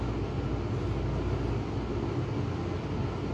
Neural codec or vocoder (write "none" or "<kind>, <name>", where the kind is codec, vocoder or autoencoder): none